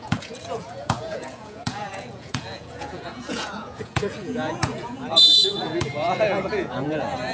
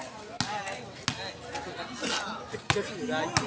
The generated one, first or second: first